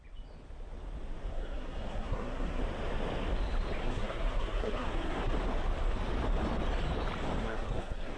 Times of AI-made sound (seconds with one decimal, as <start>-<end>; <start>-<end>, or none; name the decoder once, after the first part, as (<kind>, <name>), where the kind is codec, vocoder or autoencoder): 1.3-2.6 (codec, SNAC); 3.8-5.3; 7.4-8.2